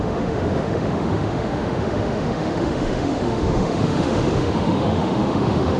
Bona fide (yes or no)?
no